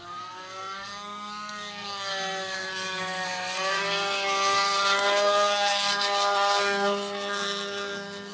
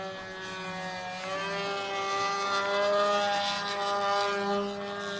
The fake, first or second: first